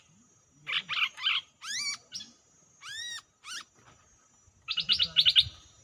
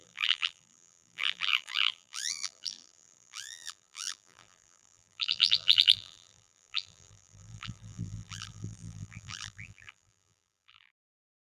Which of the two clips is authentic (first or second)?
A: first